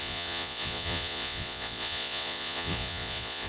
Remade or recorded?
remade